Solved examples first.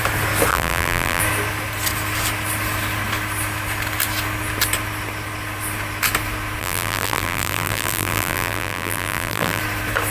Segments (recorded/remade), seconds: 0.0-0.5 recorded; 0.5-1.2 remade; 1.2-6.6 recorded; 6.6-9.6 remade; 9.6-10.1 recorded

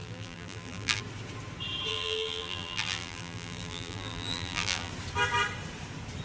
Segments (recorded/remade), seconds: 0.0-1.0 remade; 1.0-1.9 recorded; 1.9-4.9 remade; 4.9-6.2 recorded

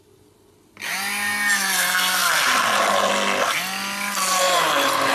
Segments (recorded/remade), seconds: 0.0-5.1 recorded

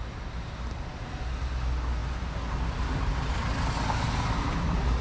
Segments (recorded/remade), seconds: 0.0-5.0 recorded

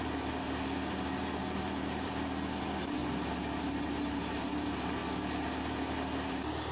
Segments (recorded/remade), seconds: 0.0-3.0 remade; 3.0-3.6 recorded; 3.6-5.0 remade; 5.0-6.3 recorded; 6.3-6.7 remade

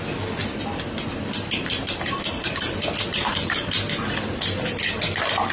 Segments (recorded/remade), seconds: 0.0-0.4 recorded; 0.4-3.7 remade; 3.7-5.5 recorded